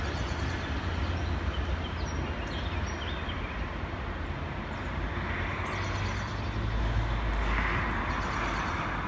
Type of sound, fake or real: real